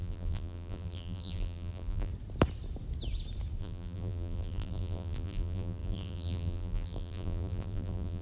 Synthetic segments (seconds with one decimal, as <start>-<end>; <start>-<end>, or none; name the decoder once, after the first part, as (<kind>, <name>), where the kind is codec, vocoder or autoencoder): 0.0-2.1 (vocoder, BigVGAN v2); 3.6-8.2